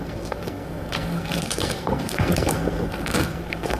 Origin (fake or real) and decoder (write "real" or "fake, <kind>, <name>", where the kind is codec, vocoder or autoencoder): fake, codec, SNAC